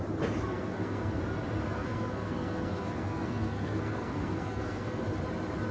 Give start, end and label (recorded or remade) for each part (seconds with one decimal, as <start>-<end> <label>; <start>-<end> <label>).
0.0-0.5 recorded; 0.5-1.2 remade; 1.2-1.6 recorded; 1.6-5.0 remade; 5.0-5.7 recorded